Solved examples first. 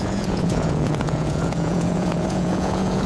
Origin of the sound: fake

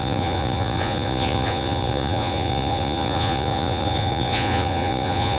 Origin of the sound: fake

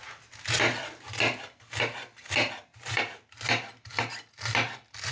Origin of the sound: real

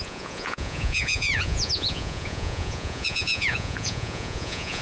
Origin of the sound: fake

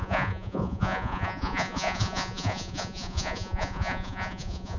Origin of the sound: fake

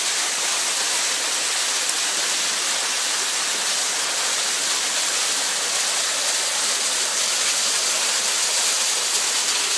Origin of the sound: real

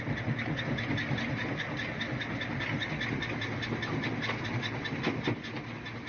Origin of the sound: real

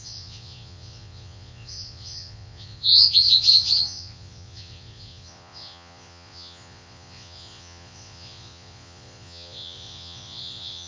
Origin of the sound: fake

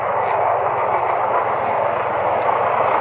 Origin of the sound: real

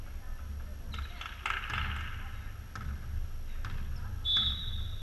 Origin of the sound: real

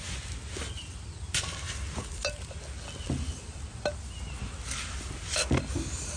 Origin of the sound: real